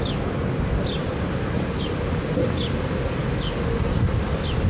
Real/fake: real